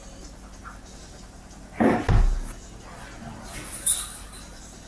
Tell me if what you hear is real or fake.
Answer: real